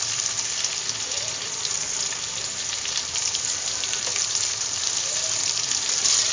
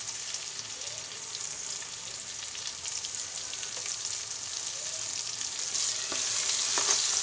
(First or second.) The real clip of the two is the second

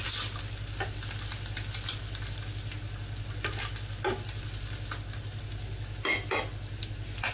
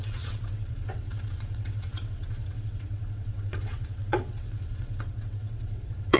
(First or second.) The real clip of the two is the first